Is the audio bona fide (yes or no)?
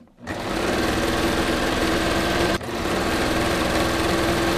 no